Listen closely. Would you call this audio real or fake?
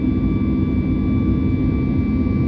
real